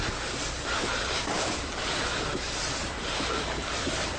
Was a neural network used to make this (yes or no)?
yes